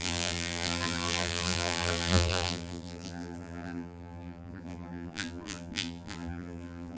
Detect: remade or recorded remade